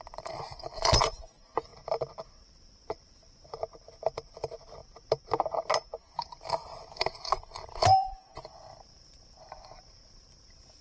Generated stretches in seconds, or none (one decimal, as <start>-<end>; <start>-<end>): 0.0-1.7; 2.3-4.8; 6.0-10.8